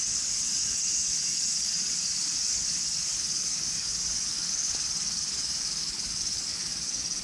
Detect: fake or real fake